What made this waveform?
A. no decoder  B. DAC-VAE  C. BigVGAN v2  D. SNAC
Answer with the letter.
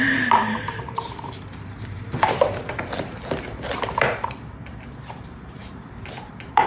C